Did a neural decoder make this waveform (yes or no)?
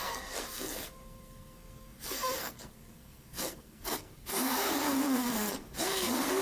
yes